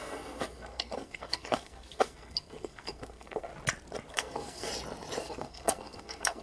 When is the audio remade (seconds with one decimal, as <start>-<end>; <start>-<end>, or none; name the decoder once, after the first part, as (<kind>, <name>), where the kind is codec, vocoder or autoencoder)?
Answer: 0.0-3.5 (codec, SNAC); 4.1-4.7; 5.2-6.4